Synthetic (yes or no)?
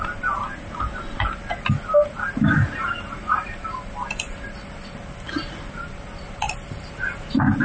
no